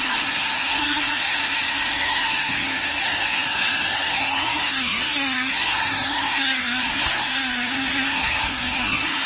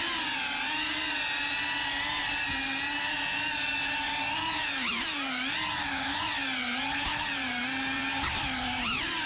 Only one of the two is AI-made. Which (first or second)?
first